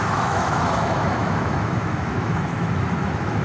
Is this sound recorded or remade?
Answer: remade